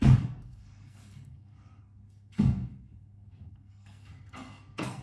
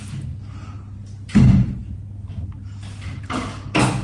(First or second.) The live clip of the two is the second